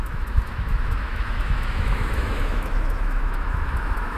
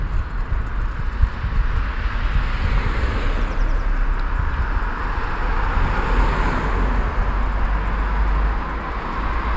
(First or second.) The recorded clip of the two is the second